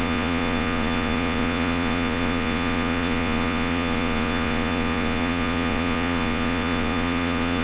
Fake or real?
fake